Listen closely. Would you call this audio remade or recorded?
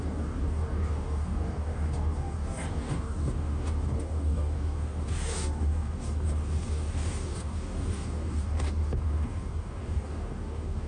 remade